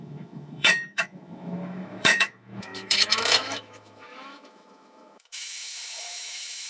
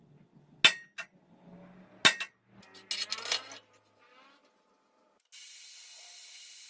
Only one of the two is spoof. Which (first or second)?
first